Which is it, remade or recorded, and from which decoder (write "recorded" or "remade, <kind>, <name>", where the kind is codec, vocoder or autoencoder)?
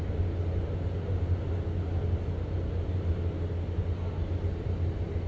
recorded